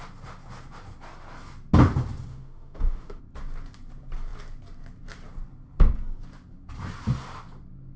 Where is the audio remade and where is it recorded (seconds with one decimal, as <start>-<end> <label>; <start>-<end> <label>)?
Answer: 0.0-2.3 recorded; 2.3-3.2 remade; 3.2-8.0 recorded